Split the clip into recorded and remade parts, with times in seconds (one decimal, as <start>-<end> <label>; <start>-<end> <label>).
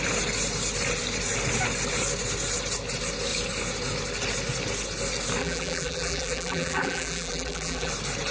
0.0-5.4 recorded; 5.4-7.9 remade; 7.9-8.3 recorded